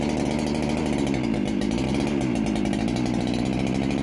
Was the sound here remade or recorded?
recorded